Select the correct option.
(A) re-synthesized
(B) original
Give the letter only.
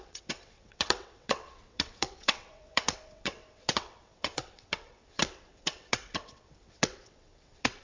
A